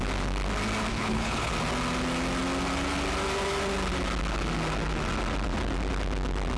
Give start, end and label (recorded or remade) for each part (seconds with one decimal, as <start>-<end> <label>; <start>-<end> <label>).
0.0-0.9 recorded; 0.9-1.5 remade; 1.5-6.6 recorded